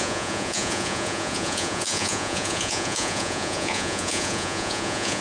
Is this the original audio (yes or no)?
no